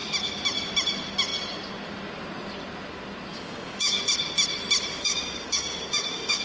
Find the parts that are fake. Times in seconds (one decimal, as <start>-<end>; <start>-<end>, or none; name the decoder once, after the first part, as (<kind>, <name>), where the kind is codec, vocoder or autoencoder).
3.3-4.0 (codec, DAC); 4.9-6.4